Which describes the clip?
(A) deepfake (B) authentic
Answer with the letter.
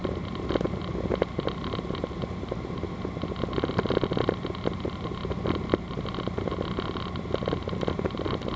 B